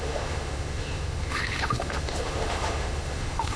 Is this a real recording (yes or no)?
no